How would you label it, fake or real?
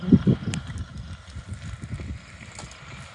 real